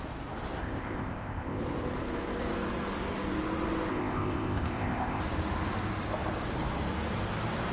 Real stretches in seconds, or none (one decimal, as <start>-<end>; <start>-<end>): 0.0-0.6; 1.6-3.9; 5.2-7.7